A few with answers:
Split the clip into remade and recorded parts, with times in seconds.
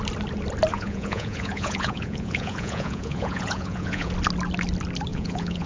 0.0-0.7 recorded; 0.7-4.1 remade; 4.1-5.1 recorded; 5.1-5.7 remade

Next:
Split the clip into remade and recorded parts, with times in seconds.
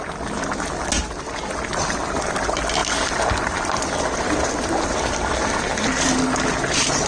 0.0-7.1 recorded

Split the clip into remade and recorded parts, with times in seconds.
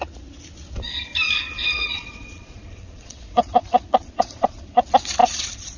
0.0-1.6 recorded; 1.6-4.8 remade; 4.8-5.2 recorded; 5.2-5.8 remade